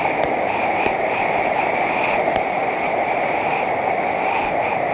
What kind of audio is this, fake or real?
real